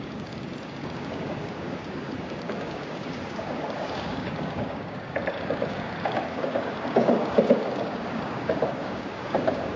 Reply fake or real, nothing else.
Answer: fake